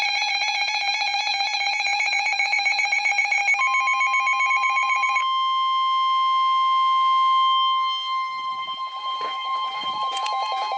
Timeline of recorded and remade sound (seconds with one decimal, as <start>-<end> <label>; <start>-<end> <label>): 0.0-3.4 remade; 3.4-4.5 recorded; 4.5-5.2 remade; 5.2-8.9 recorded; 8.9-10.8 remade